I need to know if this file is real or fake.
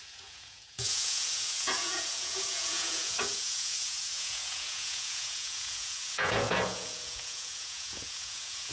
fake